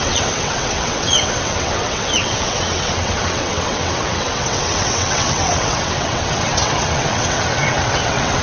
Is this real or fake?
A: fake